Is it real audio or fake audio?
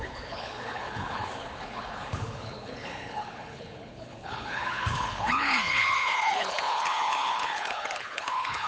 fake